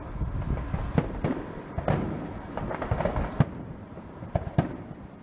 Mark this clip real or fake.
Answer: real